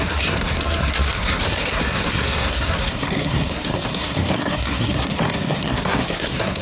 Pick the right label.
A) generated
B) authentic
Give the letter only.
A